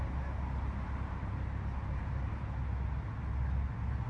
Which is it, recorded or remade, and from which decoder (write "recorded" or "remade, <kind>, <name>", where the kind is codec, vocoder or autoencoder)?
recorded